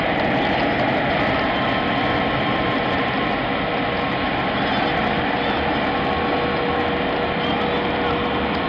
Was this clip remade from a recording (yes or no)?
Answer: no